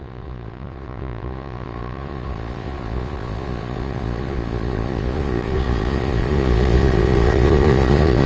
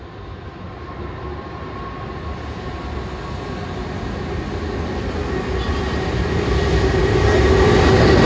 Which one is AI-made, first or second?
first